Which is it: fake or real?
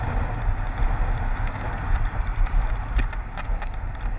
fake